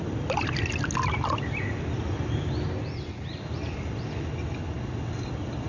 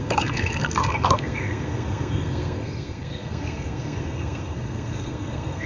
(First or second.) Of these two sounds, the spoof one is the second